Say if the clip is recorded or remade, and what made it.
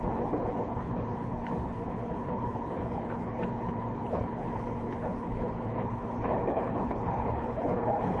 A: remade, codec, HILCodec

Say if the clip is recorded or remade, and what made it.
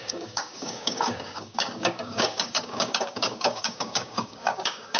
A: remade, codec, DAC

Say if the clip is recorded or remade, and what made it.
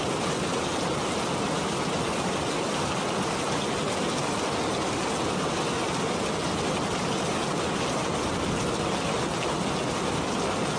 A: recorded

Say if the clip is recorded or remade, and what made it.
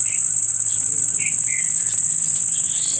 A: recorded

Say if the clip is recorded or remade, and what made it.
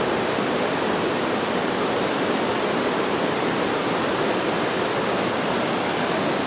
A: recorded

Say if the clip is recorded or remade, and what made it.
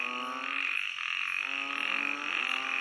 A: recorded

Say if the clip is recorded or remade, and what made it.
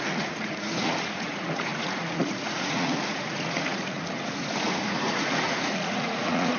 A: remade, vocoder, Vocos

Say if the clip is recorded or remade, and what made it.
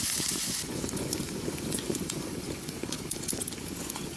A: remade, vocoder, Vocos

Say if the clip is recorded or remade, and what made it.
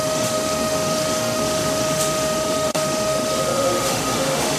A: remade, autoencoder, DAC-VAE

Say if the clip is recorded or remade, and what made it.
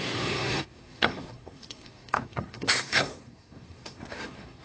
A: remade, codec, SNAC